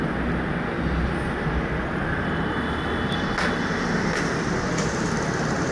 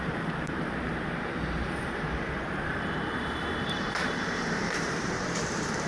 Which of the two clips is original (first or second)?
first